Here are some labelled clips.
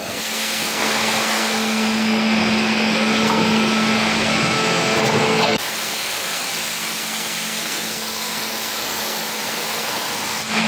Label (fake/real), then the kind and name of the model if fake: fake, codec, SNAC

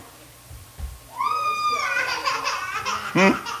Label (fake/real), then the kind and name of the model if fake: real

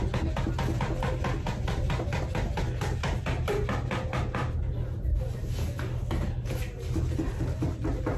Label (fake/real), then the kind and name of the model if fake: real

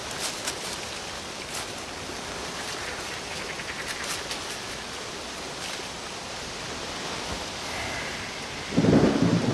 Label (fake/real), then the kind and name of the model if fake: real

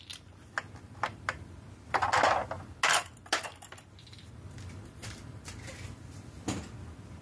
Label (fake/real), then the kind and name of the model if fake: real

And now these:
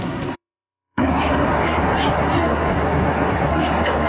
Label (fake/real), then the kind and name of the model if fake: fake, codec, SNAC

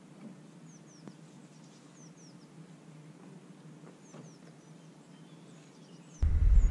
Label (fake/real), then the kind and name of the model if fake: real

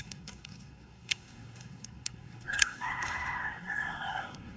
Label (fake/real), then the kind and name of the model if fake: fake, codec, SNAC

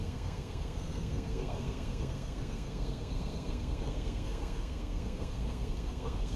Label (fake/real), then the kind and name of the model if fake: fake, codec, SNAC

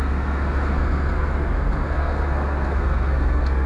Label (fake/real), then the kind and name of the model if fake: fake, codec, SNAC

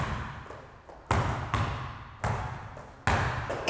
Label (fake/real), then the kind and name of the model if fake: real